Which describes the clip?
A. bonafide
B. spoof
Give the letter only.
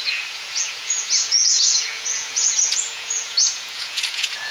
B